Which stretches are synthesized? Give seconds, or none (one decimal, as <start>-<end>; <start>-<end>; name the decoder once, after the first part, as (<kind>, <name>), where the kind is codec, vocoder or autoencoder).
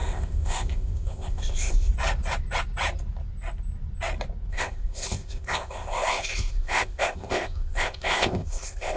0.0-1.9 (codec, ZipCodec); 4.5-9.0